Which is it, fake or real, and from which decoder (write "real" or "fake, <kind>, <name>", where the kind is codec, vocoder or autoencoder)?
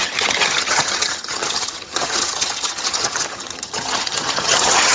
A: fake, vocoder, HiFi-GAN